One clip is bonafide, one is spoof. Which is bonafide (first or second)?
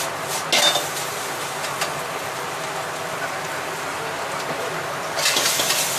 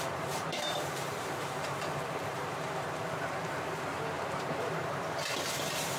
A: first